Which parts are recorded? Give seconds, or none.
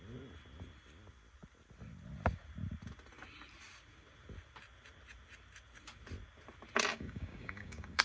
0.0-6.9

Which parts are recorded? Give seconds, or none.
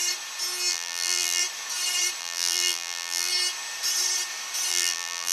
0.0-0.7; 1.4-2.2; 3.3-4.7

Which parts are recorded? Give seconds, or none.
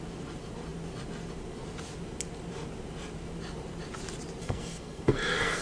0.0-4.4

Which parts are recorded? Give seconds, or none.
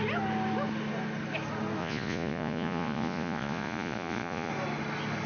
0.0-1.8; 4.5-5.3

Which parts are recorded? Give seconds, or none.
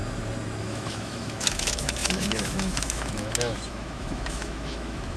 0.0-0.6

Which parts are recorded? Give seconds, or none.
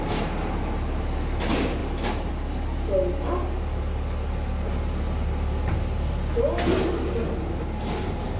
0.0-8.4